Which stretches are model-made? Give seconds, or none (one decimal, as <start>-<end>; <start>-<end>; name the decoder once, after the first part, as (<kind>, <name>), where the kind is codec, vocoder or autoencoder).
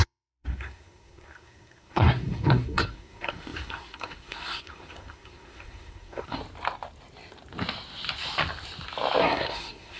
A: 0.0-6.4 (codec, SNAC); 9.2-10.0